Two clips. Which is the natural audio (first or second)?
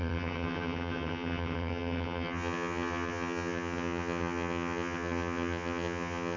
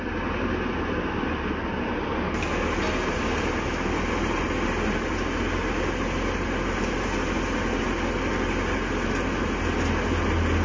second